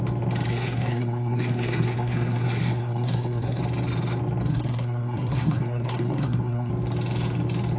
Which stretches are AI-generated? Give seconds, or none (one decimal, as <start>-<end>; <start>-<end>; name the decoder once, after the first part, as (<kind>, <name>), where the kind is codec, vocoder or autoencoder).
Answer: 0.5-3.6 (codec, SNAC); 4.5-6.7